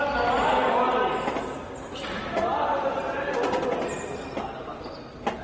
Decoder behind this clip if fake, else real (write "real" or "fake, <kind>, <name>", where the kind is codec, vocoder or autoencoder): real